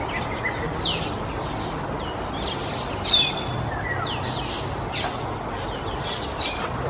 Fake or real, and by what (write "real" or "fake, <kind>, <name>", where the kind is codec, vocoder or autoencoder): real